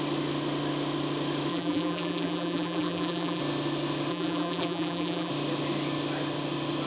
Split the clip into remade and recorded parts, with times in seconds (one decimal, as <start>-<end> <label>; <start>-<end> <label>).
0.0-1.5 recorded; 1.5-3.4 remade; 3.4-4.1 recorded; 4.1-5.3 remade; 5.3-6.9 recorded